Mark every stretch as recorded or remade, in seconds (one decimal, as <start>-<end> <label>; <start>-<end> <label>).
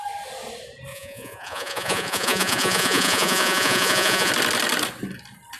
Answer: 0.0-0.9 recorded; 0.9-4.3 remade; 4.3-5.6 recorded